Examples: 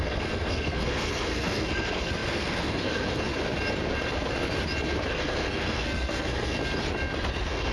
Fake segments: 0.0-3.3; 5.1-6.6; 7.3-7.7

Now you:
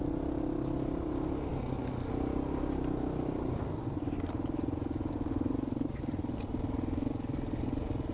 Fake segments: none

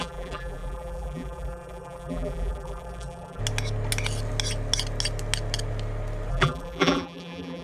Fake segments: 0.0-3.4; 6.3-7.6